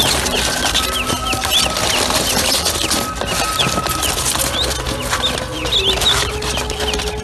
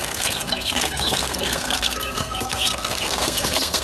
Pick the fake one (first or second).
second